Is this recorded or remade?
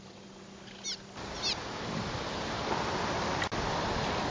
recorded